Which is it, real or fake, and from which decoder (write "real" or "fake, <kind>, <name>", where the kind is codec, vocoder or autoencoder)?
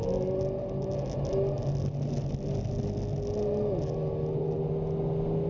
real